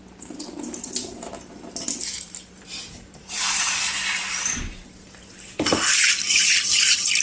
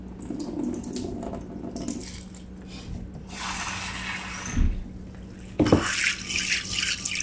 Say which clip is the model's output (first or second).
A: first